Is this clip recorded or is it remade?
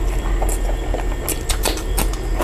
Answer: recorded